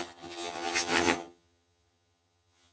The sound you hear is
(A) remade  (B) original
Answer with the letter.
A